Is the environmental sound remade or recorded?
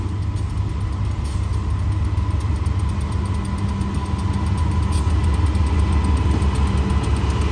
recorded